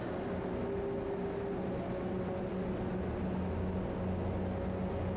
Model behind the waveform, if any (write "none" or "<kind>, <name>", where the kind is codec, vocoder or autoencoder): none